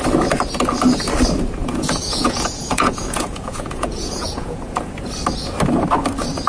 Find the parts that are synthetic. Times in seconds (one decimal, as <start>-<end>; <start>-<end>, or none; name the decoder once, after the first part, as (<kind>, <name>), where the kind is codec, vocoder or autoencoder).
1.6-4.8 (vocoder, Vocos)